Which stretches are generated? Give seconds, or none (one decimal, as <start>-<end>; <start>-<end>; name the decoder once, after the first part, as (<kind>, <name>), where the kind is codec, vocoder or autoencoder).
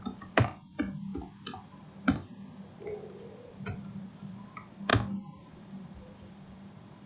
0.0-1.1 (vocoder, BigVGAN v2); 2.7-4.9; 5.4-7.1